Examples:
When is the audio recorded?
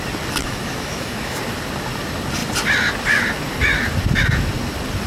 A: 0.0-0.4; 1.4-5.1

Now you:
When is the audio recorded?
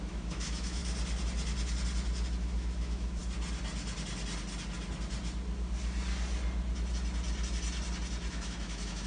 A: 0.8-2.4; 3.2-8.3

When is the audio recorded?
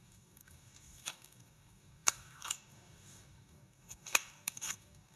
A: none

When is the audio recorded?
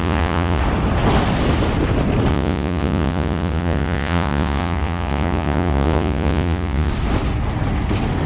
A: 0.6-2.3; 6.9-8.3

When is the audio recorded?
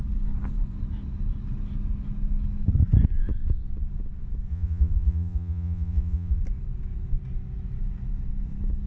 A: 0.0-4.5; 6.4-8.9